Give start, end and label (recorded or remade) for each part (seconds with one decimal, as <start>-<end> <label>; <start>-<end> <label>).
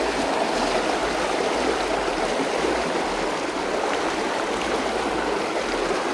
0.0-6.1 recorded